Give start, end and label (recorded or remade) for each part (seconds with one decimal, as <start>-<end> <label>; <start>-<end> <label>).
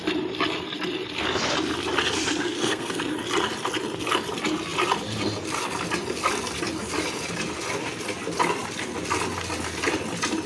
0.0-2.4 recorded; 2.4-3.0 remade; 3.0-10.5 recorded